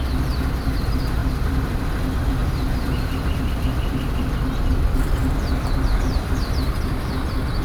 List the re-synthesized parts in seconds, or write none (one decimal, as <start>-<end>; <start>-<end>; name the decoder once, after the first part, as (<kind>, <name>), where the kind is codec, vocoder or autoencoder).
1.2-1.8 (vocoder, BigVGAN v2); 2.4-4.2; 5.2-7.0